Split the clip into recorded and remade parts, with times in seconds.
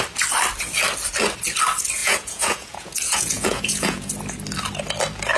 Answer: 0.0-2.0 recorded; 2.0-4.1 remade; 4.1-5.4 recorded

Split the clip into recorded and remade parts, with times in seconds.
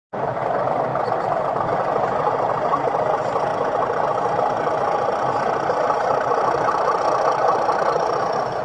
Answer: 0.0-8.6 recorded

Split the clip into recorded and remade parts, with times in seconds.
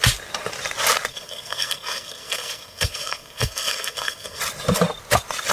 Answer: 0.0-1.1 recorded; 1.1-4.4 remade; 4.4-5.5 recorded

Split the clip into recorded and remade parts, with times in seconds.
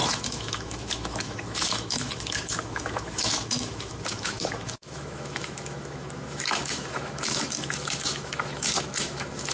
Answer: 0.0-9.5 remade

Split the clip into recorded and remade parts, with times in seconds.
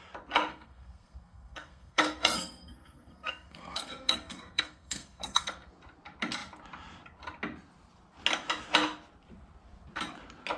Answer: 0.0-0.5 recorded; 0.5-5.7 remade; 5.7-10.6 recorded